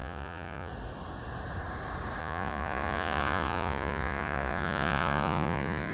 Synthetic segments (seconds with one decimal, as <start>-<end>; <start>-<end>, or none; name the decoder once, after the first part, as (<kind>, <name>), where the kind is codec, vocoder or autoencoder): 0.0-0.7 (vocoder, Vocos); 2.2-5.9